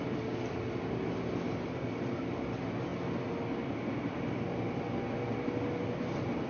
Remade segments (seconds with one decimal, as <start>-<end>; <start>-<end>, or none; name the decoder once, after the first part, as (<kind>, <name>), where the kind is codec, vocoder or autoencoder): none